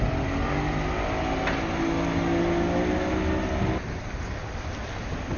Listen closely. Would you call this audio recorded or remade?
recorded